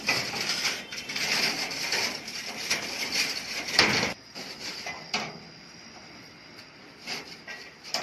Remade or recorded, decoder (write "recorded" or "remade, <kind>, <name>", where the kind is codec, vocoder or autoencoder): remade, vocoder, BigVGAN v2